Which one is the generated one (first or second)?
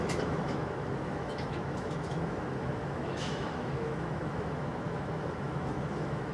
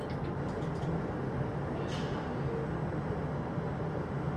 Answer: first